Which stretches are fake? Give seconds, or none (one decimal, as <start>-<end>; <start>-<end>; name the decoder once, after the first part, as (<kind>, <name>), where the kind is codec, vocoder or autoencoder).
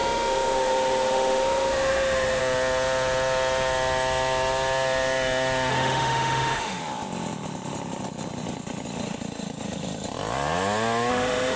0.0-2.4 (autoencoder, DAC-VAE); 5.7-6.8; 11.1-11.6